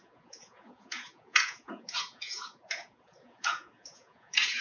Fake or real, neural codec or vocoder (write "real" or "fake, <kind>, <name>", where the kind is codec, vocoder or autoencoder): fake, vocoder, Vocos